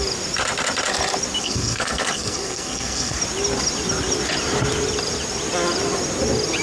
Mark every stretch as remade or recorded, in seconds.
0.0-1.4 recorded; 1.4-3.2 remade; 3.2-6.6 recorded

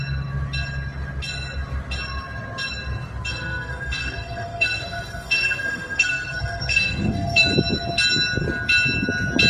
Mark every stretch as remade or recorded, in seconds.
0.0-3.3 recorded; 3.3-7.5 remade; 7.5-9.5 recorded

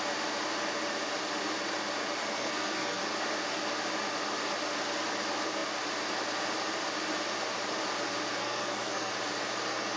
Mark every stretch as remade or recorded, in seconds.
0.0-2.2 recorded; 2.2-3.0 remade; 3.0-8.4 recorded; 8.4-9.1 remade; 9.1-10.0 recorded

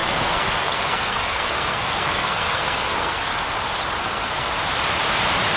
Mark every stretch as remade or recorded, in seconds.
0.0-3.4 remade; 3.4-4.0 recorded; 4.0-4.5 remade; 4.5-5.6 recorded

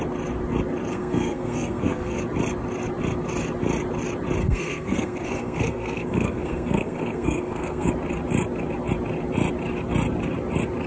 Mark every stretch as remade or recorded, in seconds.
0.0-0.9 recorded; 0.9-2.2 remade; 2.2-4.4 recorded; 4.4-7.9 remade; 7.9-10.9 recorded